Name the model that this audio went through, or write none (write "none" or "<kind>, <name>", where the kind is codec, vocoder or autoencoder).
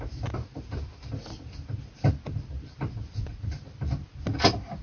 none